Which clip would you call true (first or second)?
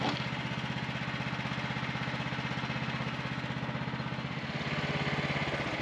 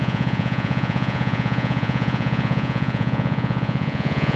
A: first